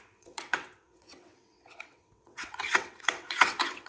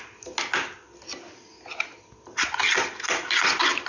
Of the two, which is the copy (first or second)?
first